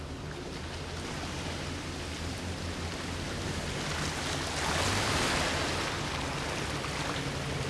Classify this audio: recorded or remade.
recorded